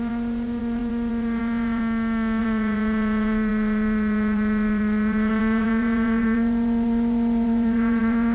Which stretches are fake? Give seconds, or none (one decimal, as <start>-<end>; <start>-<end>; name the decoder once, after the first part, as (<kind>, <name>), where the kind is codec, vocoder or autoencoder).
0.0-1.8 (vocoder, Vocos); 2.4-8.3